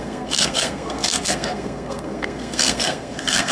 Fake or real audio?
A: fake